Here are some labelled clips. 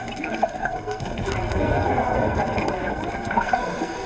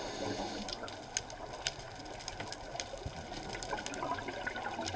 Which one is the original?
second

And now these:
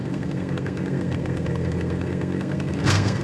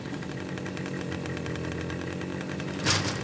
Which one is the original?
second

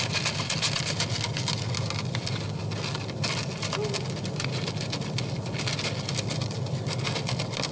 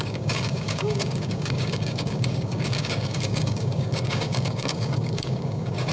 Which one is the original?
first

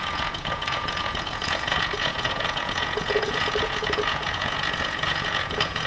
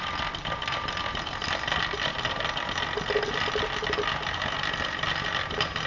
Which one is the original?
second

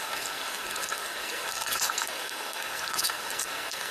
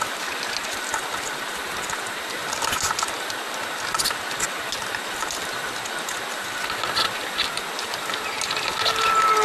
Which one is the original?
second